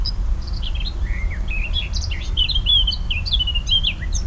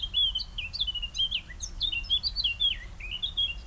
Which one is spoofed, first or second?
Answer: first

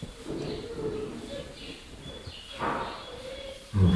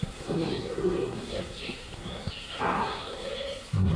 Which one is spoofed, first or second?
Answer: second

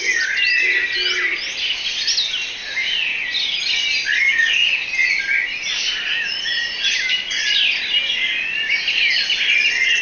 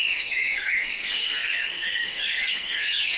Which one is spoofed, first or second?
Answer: second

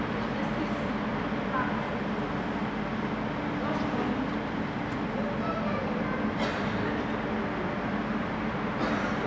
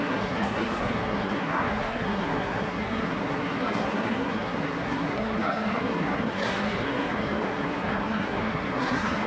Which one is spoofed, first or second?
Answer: second